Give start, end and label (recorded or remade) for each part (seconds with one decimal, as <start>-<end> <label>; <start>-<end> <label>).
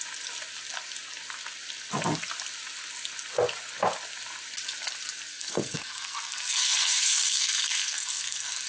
0.0-5.3 recorded; 5.3-8.7 remade